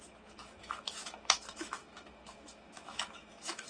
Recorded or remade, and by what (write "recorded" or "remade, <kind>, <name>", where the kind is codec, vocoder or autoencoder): remade, autoencoder, DAC-VAE